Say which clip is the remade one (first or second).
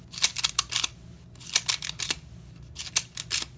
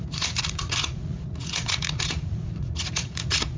second